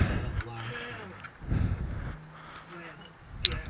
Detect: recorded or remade recorded